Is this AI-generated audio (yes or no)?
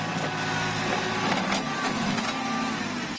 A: no